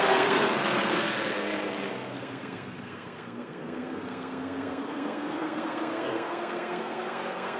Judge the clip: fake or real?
fake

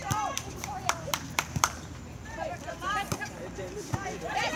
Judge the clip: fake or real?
fake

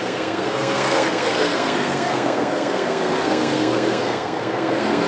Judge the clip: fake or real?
fake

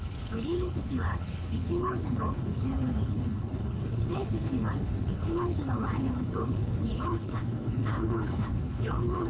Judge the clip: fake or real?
fake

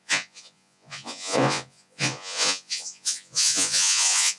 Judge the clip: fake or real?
fake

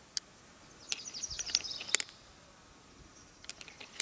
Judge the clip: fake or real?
real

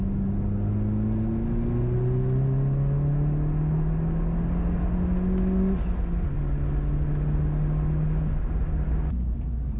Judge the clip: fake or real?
real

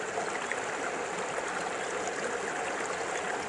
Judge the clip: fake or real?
real